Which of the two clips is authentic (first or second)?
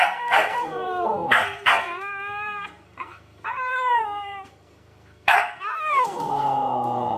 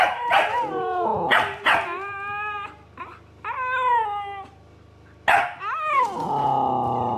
second